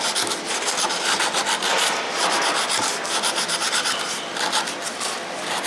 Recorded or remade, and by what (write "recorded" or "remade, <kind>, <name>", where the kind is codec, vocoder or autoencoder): recorded